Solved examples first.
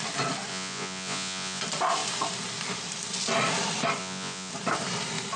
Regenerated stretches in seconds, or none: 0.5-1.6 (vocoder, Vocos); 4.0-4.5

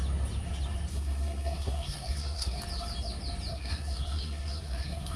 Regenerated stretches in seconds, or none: 0.9-2.6 (codec, SNAC); 3.5-5.2